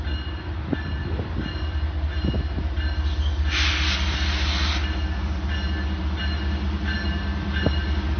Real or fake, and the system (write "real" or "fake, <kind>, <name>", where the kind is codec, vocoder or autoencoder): real